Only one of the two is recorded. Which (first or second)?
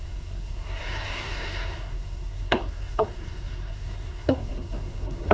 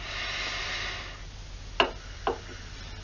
second